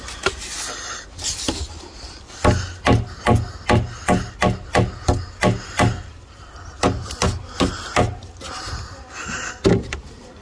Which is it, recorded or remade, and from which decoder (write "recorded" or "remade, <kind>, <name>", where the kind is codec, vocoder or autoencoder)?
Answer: recorded